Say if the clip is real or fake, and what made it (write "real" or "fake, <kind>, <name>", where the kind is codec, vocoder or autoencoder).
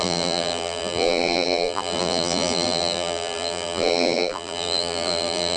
fake, vocoder, BigVGAN v2